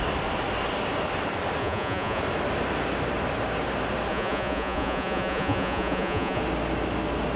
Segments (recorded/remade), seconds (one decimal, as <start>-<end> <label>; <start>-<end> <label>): 0.0-1.6 recorded; 1.6-2.2 remade; 2.2-4.1 recorded; 4.1-6.4 remade; 6.4-7.4 recorded